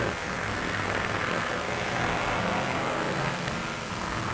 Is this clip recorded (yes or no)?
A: no